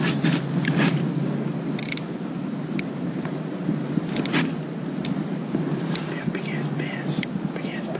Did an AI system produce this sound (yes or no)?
no